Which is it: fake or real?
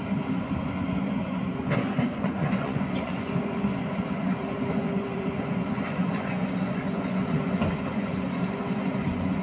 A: fake